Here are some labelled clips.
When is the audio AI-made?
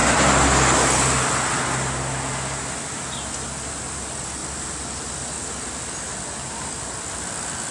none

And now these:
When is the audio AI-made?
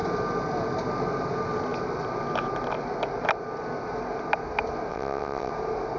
4.9-5.5 (vocoder, WaveNeXt)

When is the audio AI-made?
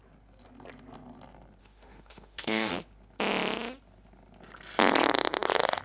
1.6-2.7 (autoencoder, DAC-VAE)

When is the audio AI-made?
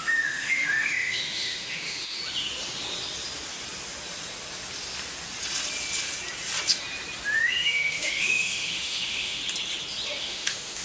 0.0-2.2 (autoencoder, DAC-VAE); 7.4-9.4; 10.2-10.8